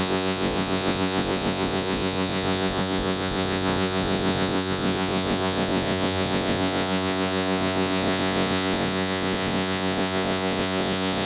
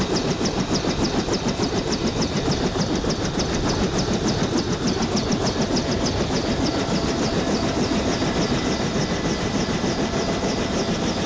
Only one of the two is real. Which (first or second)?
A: second